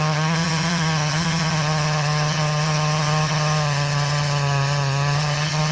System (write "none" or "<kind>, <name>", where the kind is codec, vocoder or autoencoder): vocoder, HiFi-GAN